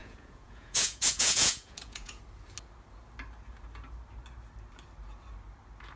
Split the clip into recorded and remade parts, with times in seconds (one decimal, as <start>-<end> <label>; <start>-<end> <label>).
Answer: 0.0-2.2 remade; 2.2-6.0 recorded